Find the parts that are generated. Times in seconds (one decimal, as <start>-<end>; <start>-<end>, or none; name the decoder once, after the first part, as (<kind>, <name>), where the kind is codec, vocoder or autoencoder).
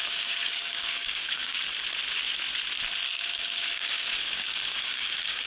0.0-1.6 (codec, DAC); 3.3-5.5